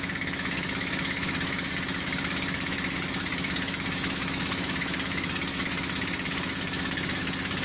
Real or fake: fake